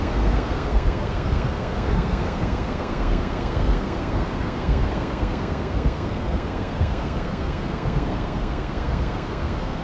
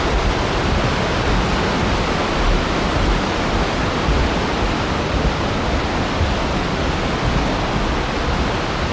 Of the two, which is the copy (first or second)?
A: first